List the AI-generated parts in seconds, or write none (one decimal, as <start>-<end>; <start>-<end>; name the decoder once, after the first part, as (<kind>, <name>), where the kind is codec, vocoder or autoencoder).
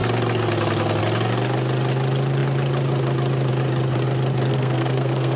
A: 4.5-5.4 (codec, SNAC)